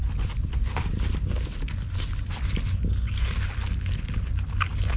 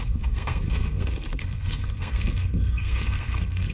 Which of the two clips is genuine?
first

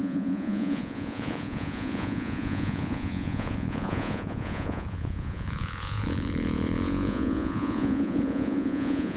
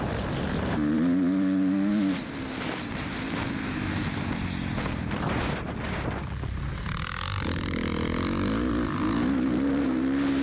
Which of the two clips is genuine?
second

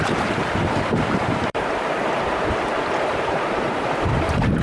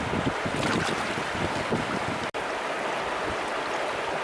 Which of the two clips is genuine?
second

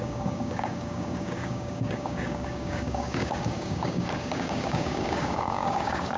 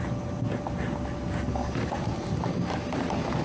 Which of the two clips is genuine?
second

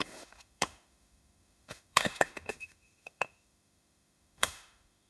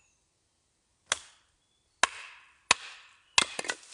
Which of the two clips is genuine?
second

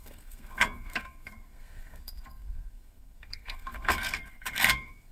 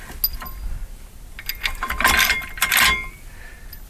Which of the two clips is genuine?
second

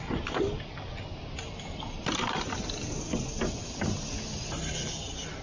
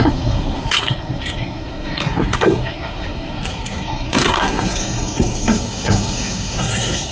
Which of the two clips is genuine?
first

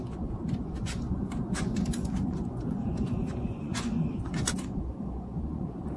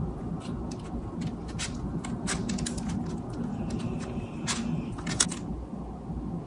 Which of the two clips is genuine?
second